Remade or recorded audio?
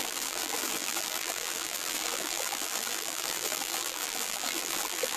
remade